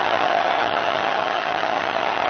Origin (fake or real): fake